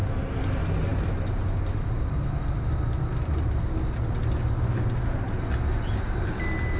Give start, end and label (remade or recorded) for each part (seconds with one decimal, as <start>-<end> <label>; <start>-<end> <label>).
0.0-6.8 recorded